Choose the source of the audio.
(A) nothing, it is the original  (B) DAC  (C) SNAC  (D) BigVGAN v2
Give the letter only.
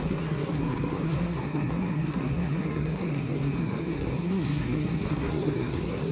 C